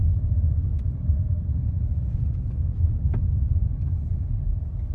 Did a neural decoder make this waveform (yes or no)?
no